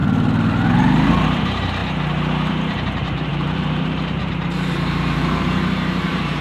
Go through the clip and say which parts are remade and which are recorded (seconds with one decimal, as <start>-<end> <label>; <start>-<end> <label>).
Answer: 0.0-1.8 remade; 1.8-2.5 recorded; 2.5-6.4 remade